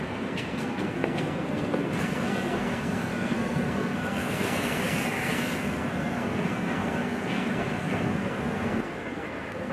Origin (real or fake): fake